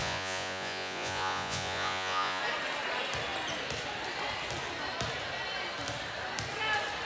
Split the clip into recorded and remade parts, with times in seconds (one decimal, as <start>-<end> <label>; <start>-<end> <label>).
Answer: 0.0-2.4 remade; 2.4-7.0 recorded